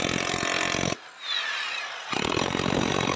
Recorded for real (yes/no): yes